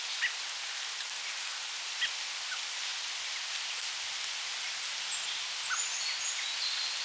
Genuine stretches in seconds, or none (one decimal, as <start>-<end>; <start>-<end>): 0.0-7.0